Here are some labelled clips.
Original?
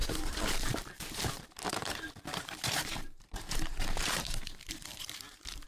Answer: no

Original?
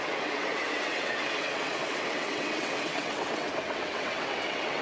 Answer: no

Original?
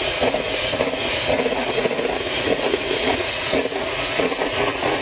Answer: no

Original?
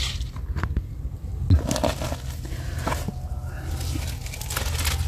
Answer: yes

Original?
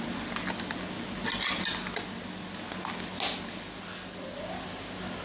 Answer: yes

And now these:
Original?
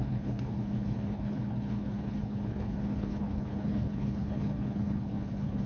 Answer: no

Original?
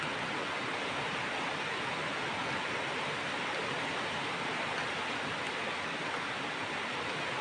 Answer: yes